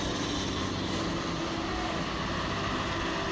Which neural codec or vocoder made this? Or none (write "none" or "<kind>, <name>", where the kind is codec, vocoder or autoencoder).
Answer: none